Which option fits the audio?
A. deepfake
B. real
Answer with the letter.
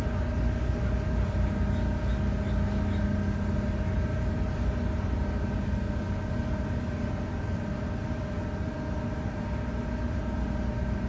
B